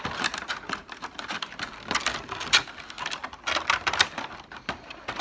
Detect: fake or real fake